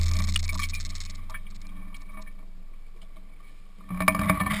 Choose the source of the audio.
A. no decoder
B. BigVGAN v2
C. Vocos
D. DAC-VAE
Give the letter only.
A